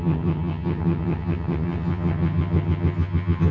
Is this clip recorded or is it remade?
remade